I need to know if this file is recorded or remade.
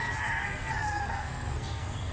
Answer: remade